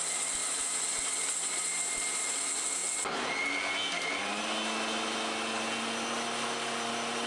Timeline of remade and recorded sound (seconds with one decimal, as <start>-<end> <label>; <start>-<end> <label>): 0.0-0.4 recorded; 0.4-1.9 remade; 1.9-7.3 recorded